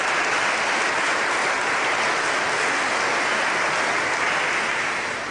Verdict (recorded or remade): recorded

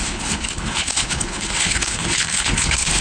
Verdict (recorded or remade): remade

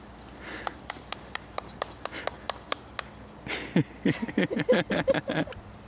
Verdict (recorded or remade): recorded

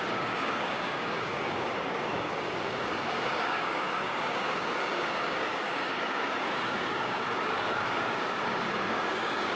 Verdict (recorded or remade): remade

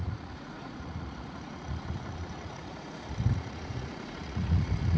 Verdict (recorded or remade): remade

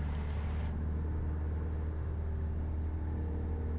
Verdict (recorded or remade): recorded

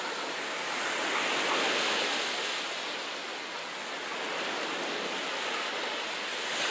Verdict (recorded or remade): recorded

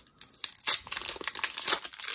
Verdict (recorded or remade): recorded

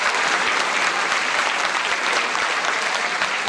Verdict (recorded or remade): remade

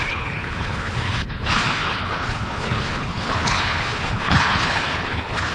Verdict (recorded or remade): remade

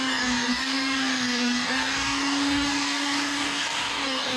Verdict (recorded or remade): remade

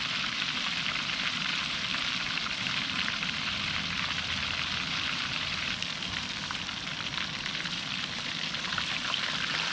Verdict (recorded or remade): remade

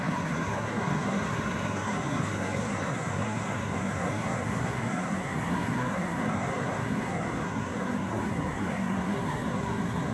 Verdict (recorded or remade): remade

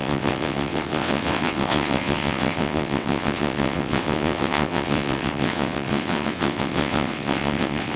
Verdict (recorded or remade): remade